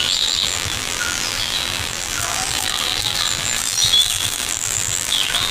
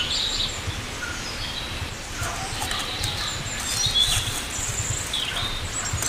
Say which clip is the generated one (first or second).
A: first